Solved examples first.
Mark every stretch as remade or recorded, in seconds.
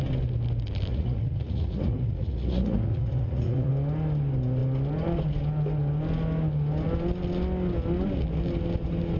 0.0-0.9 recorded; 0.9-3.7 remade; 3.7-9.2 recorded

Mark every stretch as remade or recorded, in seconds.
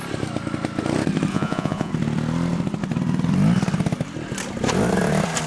0.0-1.3 recorded; 1.3-1.9 remade; 1.9-5.5 recorded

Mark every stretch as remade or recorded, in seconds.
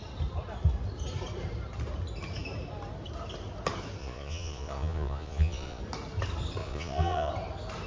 0.0-4.0 recorded; 4.0-5.8 remade; 5.8-6.6 recorded; 6.6-7.3 remade; 7.3-7.9 recorded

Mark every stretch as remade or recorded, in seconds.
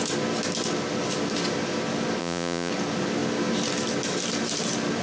0.0-2.2 recorded; 2.2-2.7 remade; 2.7-5.0 recorded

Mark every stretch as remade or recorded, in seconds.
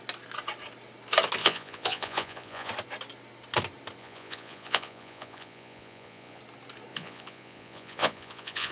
0.0-1.4 recorded; 1.4-2.7 remade; 2.7-4.0 recorded; 4.0-6.4 remade; 6.4-6.9 recorded; 6.9-8.7 remade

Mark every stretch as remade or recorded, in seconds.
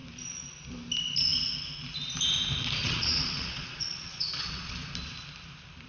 0.0-2.8 recorded; 2.8-4.7 remade; 4.7-5.9 recorded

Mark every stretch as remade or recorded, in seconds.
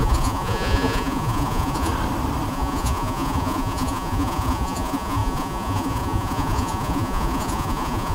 0.0-1.9 remade; 1.9-2.5 recorded; 2.5-8.1 remade